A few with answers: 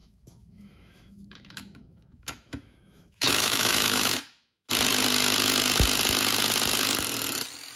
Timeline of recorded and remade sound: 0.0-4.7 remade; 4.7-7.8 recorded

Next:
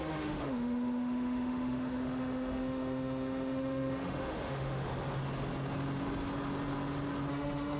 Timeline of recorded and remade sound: 0.0-4.9 remade; 4.9-7.3 recorded; 7.3-7.8 remade

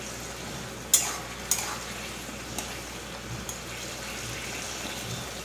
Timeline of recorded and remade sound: 0.0-5.4 recorded

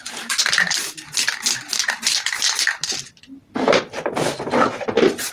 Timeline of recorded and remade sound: 0.0-5.3 recorded

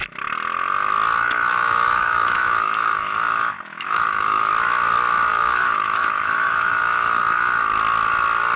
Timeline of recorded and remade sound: 0.0-1.5 recorded; 1.5-4.5 remade; 4.5-5.3 recorded; 5.3-7.2 remade; 7.2-8.6 recorded